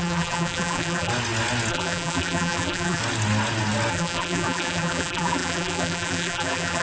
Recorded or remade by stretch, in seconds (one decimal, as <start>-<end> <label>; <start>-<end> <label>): 0.0-1.1 remade; 1.1-1.7 recorded; 1.7-3.0 remade; 3.0-3.9 recorded; 3.9-6.8 remade